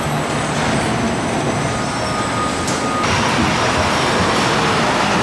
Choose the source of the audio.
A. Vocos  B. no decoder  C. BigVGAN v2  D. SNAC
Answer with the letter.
B